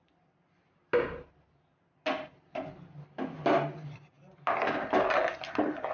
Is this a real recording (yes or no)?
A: yes